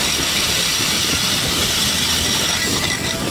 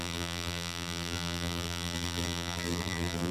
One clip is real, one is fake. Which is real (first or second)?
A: first